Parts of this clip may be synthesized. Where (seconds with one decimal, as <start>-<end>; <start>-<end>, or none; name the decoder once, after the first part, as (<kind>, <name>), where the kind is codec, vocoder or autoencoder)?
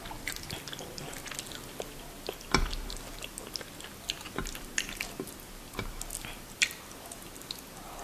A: none